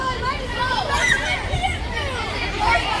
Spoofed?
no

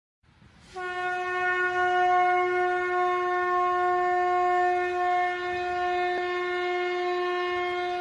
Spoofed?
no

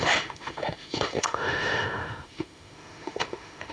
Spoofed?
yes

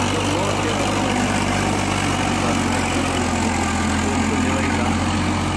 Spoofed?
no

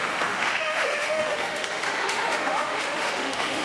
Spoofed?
yes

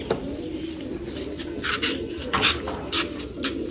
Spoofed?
no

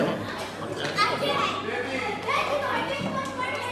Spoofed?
no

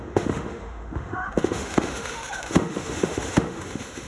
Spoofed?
yes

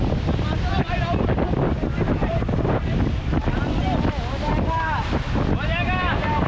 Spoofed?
no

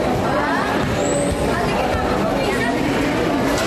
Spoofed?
no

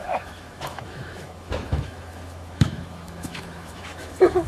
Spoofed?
yes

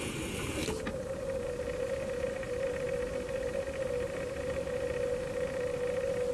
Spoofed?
no